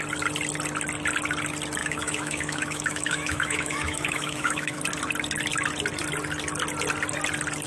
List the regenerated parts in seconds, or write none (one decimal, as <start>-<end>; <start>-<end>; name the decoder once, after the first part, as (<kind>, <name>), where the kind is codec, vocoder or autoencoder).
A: 1.8-4.8 (autoencoder, DAC-VAE)